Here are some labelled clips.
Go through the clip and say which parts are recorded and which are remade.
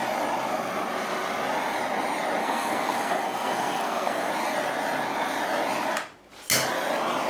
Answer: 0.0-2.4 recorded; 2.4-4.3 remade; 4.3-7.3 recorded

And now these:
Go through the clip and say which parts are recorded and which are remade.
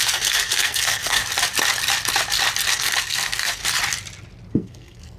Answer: 0.0-1.2 remade; 1.2-2.7 recorded; 2.7-3.6 remade; 3.6-4.5 recorded; 4.5-5.2 remade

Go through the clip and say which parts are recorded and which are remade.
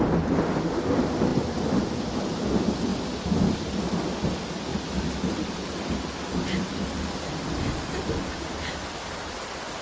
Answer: 0.0-9.8 recorded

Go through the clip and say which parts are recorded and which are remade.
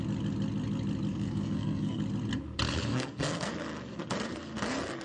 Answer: 0.0-1.1 recorded; 1.1-2.0 remade; 2.0-2.9 recorded; 2.9-3.5 remade; 3.5-5.0 recorded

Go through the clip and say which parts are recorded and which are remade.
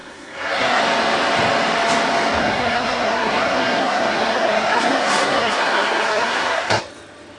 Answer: 0.0-0.8 remade; 0.8-2.4 recorded; 2.4-6.8 remade; 6.8-7.4 recorded